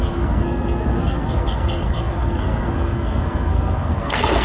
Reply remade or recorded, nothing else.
remade